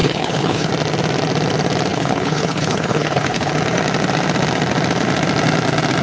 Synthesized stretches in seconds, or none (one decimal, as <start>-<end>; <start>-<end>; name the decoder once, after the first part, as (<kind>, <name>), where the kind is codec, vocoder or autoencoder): 0.0-0.7 (codec, HILCodec); 1.9-3.5

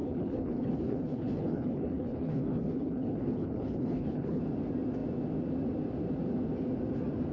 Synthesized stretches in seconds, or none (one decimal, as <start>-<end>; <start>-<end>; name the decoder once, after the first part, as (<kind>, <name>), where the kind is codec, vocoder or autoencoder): 0.0-4.4 (codec, HILCodec)

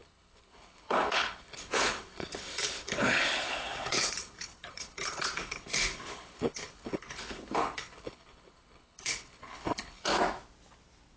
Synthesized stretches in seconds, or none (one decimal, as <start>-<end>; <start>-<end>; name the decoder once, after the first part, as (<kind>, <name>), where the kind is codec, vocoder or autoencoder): 0.0-10.1 (codec, HILCodec)

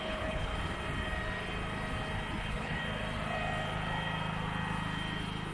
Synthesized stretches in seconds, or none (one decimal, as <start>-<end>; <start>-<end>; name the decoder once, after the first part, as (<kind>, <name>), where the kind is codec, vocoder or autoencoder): 0.0-0.5 (codec, HILCodec); 2.4-2.8